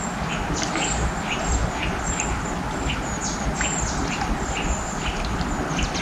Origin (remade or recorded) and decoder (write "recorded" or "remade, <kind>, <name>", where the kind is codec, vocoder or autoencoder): recorded